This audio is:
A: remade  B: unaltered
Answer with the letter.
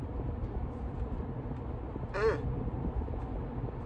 B